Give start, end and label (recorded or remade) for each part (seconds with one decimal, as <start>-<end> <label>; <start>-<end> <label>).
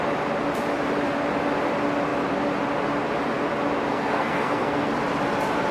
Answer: 0.0-3.9 recorded; 3.9-4.9 remade; 4.9-5.7 recorded